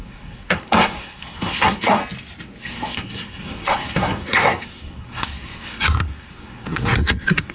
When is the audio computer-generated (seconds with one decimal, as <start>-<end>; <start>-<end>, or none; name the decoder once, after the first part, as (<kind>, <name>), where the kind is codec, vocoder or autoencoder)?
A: 0.0-2.0 (codec, SNAC); 2.6-7.5